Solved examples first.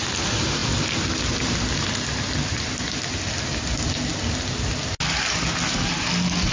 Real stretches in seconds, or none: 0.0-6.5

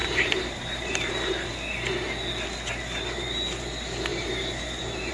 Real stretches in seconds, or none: 1.5-4.1

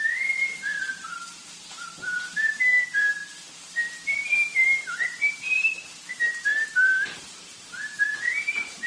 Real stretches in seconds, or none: none